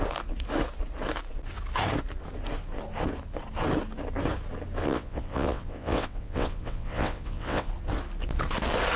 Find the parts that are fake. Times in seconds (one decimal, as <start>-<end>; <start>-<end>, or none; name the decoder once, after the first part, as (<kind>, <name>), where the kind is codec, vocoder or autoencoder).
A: 4.8-7.7 (vocoder, WaveNeXt)